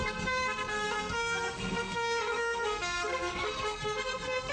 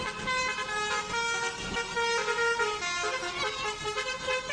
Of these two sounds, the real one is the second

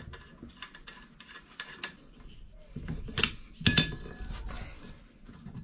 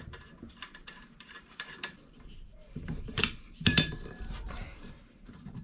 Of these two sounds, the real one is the first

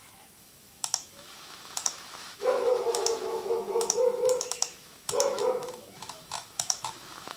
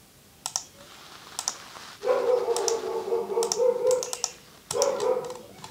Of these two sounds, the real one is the second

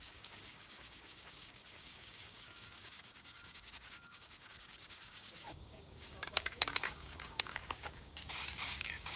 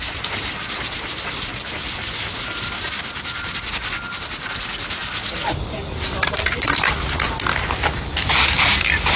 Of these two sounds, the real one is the second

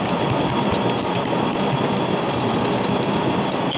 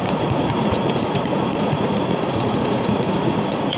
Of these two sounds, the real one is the first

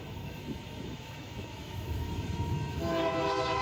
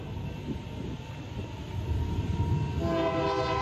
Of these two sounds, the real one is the second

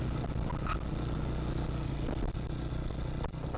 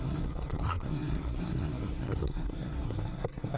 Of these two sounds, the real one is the first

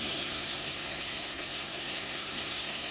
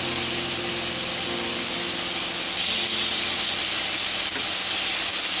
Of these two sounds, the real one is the second